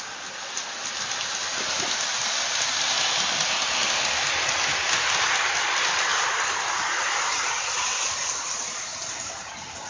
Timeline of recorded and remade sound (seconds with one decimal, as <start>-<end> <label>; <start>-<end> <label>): 0.0-9.9 recorded